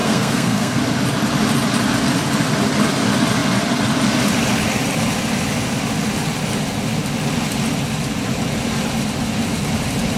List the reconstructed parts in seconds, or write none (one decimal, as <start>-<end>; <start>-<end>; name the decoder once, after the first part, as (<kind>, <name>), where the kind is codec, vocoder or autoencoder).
0.0-0.8 (codec, SNAC)